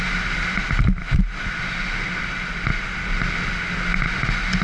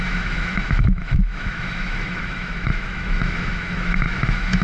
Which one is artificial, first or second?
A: second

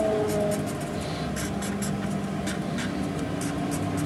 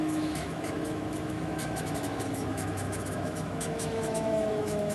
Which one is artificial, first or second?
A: second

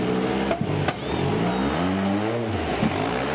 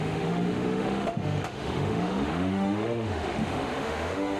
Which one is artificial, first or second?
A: second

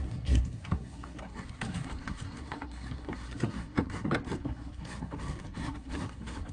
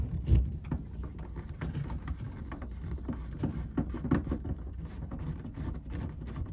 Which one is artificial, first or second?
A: first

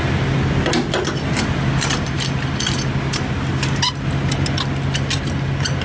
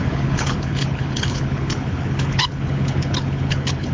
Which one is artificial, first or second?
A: second